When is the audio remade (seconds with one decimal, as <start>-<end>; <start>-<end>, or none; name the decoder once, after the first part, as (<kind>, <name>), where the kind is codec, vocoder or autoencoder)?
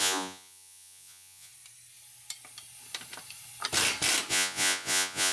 0.0-1.5 (vocoder, Vocos); 4.3-5.3